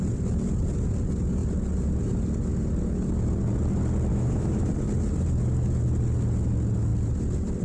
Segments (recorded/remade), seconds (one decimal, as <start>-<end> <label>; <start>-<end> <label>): 0.0-4.1 recorded; 4.1-4.7 remade; 4.7-7.6 recorded